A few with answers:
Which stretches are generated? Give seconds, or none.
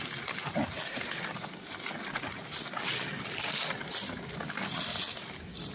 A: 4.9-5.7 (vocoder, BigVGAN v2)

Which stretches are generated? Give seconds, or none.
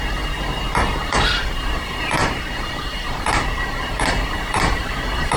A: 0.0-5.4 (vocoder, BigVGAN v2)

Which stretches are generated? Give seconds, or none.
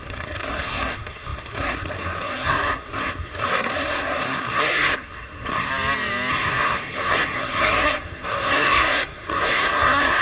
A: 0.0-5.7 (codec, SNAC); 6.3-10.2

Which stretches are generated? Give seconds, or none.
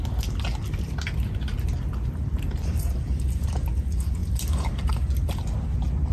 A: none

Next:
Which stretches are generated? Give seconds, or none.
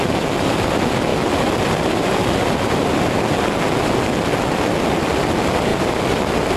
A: none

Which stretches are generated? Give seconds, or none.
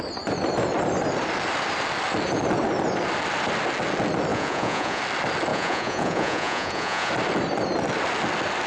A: 4.3-5.0 (vocoder, Vocos); 5.5-7.1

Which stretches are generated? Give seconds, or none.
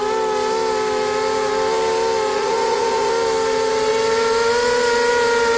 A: 2.3-3.1 (vocoder, Vocos)